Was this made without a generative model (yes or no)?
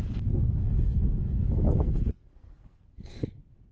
no